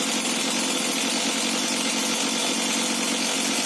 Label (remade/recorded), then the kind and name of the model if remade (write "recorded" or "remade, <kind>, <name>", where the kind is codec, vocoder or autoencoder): recorded